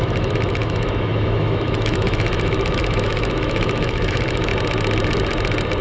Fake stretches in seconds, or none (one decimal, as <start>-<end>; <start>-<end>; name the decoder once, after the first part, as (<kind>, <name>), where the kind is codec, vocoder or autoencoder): 0.0-4.5 (autoencoder, DAC-VAE)